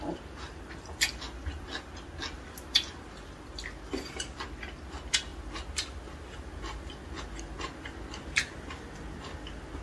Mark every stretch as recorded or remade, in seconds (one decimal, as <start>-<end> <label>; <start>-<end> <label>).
0.0-9.8 recorded